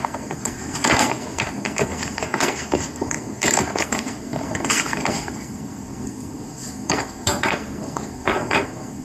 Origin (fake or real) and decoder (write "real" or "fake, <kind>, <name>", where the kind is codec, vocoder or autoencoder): fake, codec, SNAC